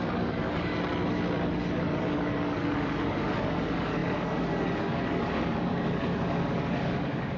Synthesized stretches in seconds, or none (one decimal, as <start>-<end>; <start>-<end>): 0.0-0.7; 1.7-7.4